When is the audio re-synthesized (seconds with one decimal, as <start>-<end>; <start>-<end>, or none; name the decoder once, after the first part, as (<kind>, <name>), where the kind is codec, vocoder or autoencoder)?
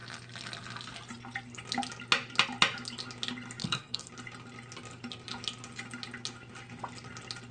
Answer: 3.6-4.1 (codec, SNAC)